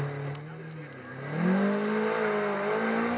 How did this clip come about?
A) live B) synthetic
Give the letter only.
A